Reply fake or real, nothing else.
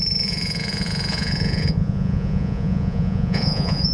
fake